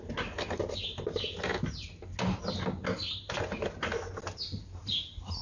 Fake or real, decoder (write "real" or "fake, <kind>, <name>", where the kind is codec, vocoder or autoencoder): real